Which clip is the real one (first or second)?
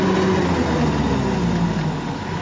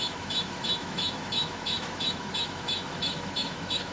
first